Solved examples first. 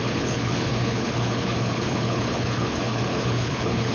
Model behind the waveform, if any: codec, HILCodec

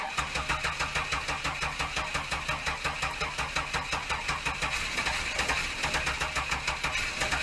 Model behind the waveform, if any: none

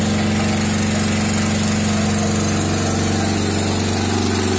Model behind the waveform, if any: none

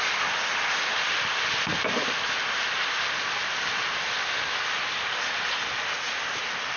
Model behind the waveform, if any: none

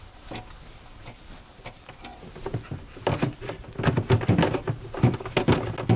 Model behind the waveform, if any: none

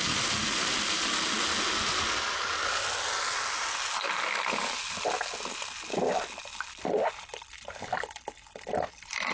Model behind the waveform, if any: none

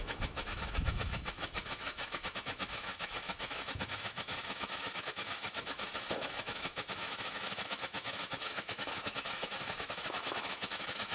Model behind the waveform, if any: autoencoder, DAC-VAE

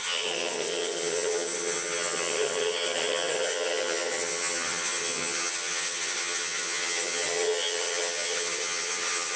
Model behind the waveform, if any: vocoder, HiFi-GAN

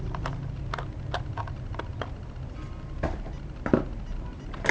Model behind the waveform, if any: none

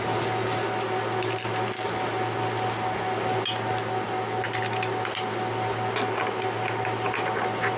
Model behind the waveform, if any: none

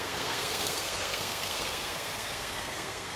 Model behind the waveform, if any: codec, SNAC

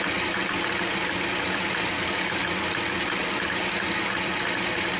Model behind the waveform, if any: none